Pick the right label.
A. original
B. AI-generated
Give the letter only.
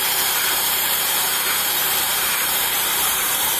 B